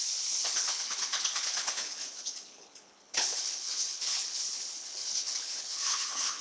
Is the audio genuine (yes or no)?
no